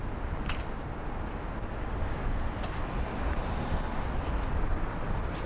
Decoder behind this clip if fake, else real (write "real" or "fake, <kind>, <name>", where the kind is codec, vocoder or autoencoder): real